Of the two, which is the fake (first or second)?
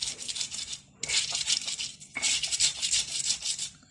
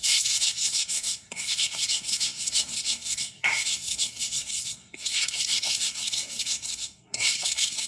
second